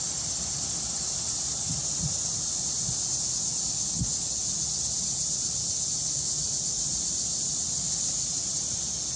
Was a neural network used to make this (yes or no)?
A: no